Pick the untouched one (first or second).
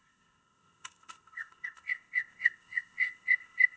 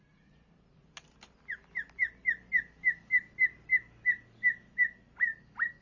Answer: second